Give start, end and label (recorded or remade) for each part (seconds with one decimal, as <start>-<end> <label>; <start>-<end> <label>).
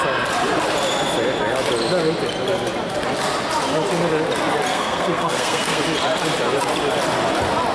0.0-4.7 recorded; 4.7-5.8 remade; 5.8-7.7 recorded